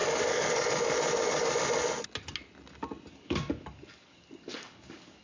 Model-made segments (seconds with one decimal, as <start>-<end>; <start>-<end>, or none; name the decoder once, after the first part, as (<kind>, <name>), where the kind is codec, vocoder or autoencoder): 3.1-5.2 (codec, DAC)